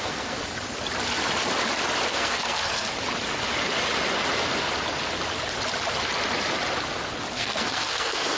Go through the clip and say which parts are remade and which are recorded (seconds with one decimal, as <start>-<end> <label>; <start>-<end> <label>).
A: 0.0-0.4 remade; 0.4-2.1 recorded; 2.1-2.9 remade; 2.9-7.3 recorded; 7.3-8.4 remade